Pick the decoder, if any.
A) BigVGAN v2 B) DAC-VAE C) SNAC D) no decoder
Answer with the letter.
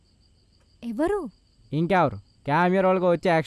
D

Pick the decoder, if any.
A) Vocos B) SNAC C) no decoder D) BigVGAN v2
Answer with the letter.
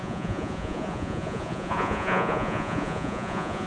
A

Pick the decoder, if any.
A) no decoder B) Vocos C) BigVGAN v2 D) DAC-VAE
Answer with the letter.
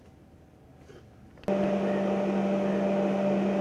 A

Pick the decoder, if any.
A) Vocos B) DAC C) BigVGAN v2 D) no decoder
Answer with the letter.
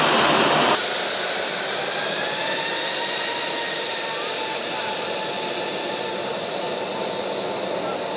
D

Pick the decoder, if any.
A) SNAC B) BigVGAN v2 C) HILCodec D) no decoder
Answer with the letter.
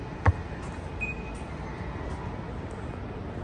D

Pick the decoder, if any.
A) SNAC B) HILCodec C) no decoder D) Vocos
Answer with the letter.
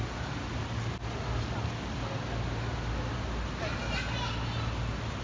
C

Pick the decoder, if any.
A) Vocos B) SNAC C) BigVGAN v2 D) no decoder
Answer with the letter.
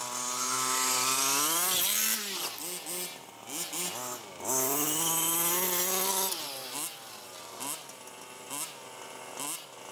D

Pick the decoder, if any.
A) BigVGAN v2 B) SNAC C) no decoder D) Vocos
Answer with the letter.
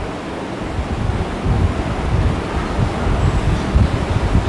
C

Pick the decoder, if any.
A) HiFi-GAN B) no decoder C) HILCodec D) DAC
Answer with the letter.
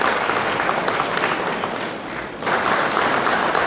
B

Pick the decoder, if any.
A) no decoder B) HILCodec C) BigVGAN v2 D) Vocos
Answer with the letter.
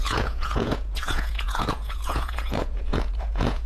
D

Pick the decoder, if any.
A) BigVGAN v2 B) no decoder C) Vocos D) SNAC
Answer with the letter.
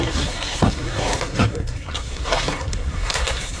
D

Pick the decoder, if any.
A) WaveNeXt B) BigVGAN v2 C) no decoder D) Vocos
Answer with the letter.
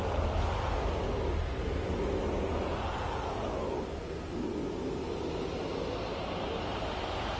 C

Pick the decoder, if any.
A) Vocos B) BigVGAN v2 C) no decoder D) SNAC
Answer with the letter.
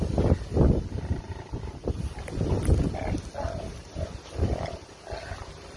C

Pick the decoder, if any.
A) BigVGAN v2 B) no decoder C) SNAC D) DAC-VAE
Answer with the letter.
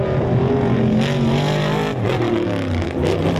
B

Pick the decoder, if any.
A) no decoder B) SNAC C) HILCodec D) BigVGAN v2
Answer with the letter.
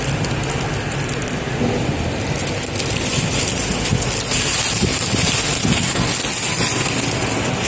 A